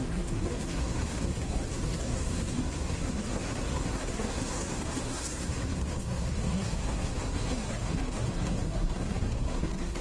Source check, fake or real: fake